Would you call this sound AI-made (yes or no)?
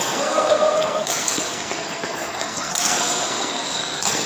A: yes